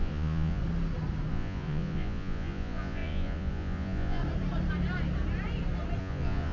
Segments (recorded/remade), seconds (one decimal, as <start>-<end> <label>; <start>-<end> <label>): 0.0-0.6 remade; 0.6-1.3 recorded; 1.3-4.2 remade; 4.2-6.0 recorded; 6.0-6.5 remade